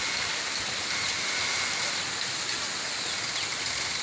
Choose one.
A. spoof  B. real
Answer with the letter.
B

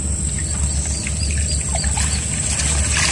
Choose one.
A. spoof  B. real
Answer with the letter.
B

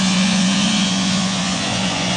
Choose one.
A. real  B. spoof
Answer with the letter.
B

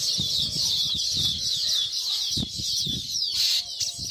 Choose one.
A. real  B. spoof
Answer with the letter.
A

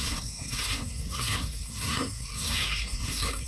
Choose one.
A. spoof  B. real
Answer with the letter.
A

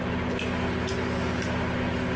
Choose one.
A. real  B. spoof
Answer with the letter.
A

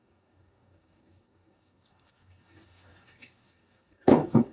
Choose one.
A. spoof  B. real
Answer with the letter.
A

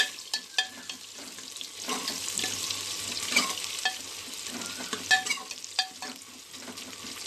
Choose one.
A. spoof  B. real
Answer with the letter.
B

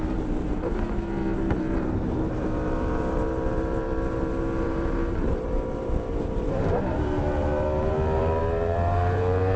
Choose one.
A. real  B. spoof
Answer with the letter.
B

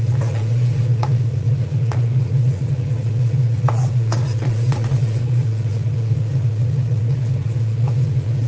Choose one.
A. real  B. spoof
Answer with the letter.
B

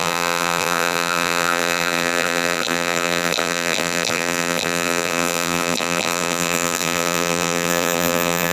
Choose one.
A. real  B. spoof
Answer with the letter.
B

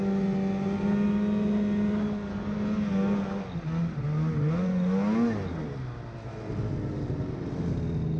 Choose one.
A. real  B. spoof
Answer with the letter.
A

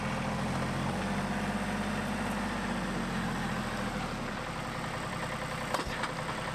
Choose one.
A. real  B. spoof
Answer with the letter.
A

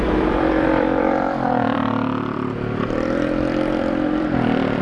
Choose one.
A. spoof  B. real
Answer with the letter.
A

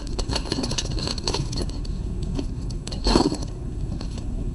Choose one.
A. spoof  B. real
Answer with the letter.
A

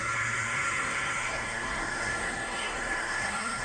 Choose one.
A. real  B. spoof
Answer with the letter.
B